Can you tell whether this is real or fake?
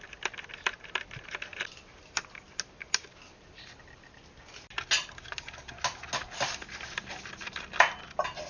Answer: real